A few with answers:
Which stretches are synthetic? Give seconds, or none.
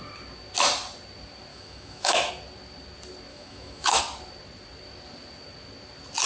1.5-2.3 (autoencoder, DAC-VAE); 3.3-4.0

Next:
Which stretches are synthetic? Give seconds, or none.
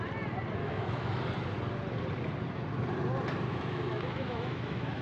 0.6-1.1 (autoencoder, DAC-VAE); 3.5-5.0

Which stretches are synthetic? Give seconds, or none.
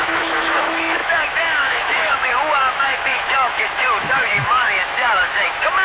0.0-5.8 (autoencoder, DAC-VAE)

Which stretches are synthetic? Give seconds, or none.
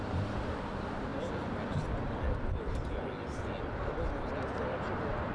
none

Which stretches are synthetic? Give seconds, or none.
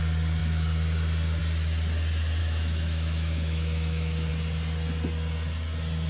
2.4-4.3 (autoencoder, DAC-VAE)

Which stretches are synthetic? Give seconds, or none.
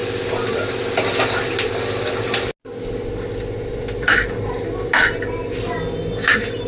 none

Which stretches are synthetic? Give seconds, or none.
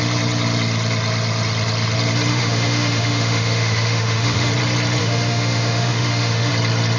2.3-4.5 (autoencoder, DAC-VAE); 5.0-6.5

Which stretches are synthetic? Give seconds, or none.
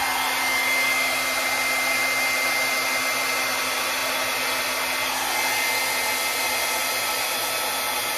none